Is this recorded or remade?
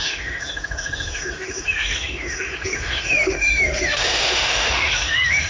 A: remade